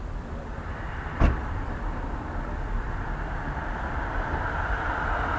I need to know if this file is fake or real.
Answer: fake